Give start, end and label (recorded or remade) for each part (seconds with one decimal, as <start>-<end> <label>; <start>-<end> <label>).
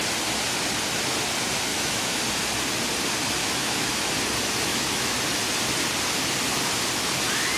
0.0-1.7 recorded; 1.7-2.2 remade; 2.2-3.4 recorded; 3.4-4.1 remade; 4.1-4.7 recorded; 4.7-5.2 remade; 5.2-7.6 recorded